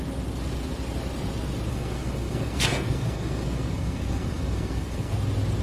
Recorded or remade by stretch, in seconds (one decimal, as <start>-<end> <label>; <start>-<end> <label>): 0.0-1.7 recorded; 1.7-5.1 remade; 5.1-5.6 recorded